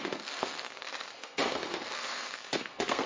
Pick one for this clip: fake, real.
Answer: fake